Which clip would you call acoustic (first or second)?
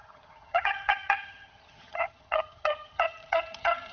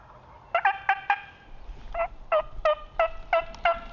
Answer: second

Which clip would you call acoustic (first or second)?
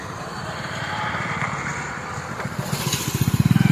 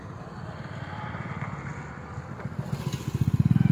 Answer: second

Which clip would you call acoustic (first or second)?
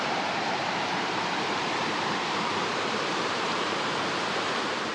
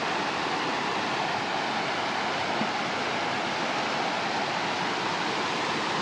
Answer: second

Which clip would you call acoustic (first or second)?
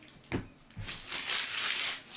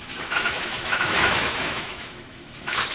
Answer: first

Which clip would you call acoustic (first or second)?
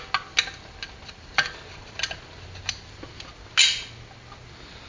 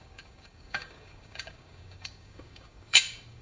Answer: first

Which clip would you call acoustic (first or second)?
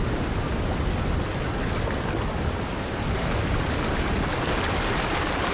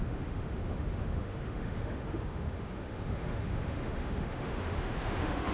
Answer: first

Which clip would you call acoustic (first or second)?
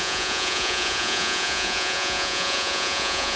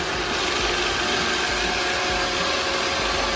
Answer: second